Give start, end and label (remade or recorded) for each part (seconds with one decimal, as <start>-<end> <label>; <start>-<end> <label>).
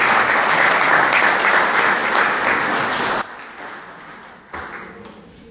0.0-5.5 recorded